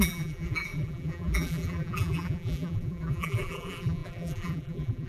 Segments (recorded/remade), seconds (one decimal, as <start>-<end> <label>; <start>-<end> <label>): 0.0-5.1 remade

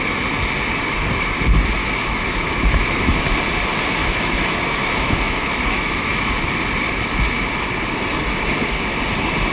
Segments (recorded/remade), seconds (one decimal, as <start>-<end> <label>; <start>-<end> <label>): 0.0-1.8 recorded; 1.8-3.2 remade; 3.2-4.0 recorded; 4.0-6.3 remade; 6.3-9.5 recorded

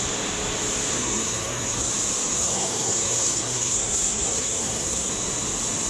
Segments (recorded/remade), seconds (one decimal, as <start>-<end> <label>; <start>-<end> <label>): 0.0-0.9 recorded; 0.9-1.9 remade; 1.9-2.3 recorded; 2.3-5.1 remade; 5.1-5.9 recorded

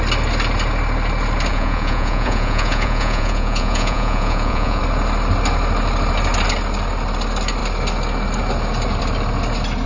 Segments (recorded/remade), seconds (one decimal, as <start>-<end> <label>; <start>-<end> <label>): 0.0-1.5 recorded; 1.5-4.8 remade; 4.8-9.9 recorded

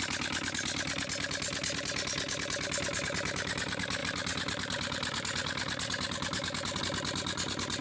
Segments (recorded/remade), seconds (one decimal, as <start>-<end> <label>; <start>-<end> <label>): 0.0-4.0 recorded; 4.0-6.8 remade; 6.8-7.8 recorded

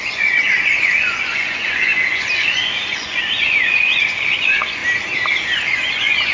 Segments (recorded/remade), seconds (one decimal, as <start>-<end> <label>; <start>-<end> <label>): 0.0-4.8 remade; 4.8-5.6 recorded; 5.6-6.3 remade

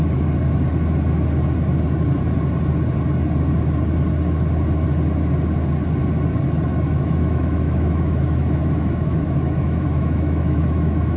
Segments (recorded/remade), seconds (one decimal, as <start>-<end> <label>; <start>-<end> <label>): 0.0-6.7 recorded; 6.7-11.2 remade